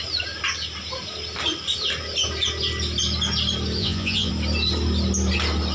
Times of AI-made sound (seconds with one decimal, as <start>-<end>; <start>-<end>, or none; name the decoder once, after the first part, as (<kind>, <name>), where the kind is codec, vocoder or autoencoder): 3.8-4.3 (vocoder, Vocos)